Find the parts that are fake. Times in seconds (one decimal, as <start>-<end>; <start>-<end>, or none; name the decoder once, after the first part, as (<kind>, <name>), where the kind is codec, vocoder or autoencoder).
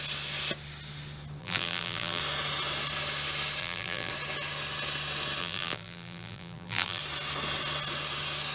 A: 1.4-2.2 (vocoder, BigVGAN v2); 3.6-4.1; 5.4-7.0